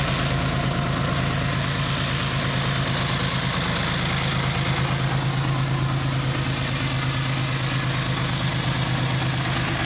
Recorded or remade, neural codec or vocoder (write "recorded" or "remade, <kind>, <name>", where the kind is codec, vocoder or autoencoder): recorded